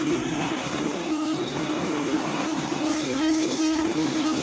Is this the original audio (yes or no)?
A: no